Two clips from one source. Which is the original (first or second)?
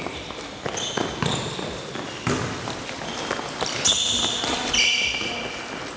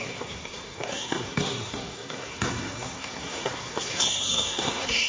first